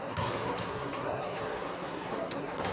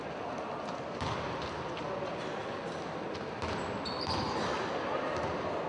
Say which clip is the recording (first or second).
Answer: second